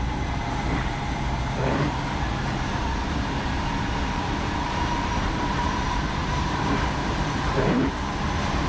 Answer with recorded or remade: remade